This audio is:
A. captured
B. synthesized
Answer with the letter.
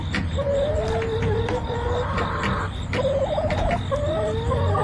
A